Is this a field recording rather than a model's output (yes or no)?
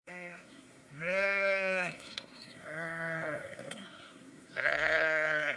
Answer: no